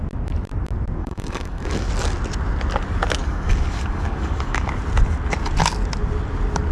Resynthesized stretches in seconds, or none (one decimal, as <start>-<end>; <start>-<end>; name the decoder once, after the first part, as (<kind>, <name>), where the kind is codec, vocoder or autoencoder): 1.0-1.9 (codec, DAC); 3.2-4.7